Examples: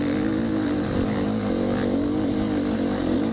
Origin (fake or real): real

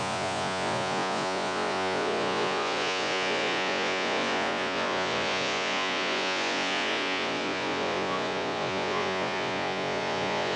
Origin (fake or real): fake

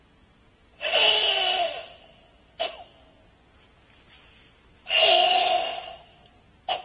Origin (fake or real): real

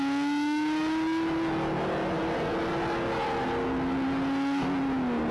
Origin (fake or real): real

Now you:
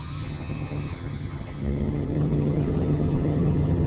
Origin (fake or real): fake